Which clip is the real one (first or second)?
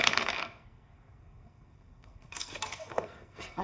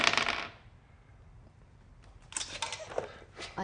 second